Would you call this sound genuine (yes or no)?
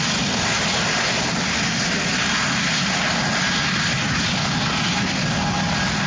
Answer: yes